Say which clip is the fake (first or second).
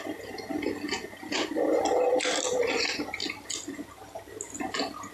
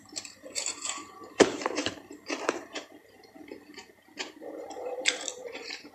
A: second